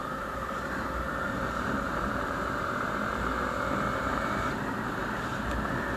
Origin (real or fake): fake